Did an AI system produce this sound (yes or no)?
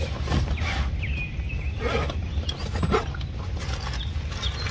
no